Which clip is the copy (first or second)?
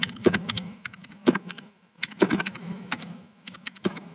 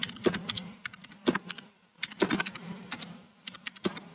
first